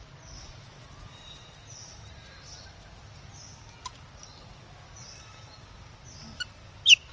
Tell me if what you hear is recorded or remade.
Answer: recorded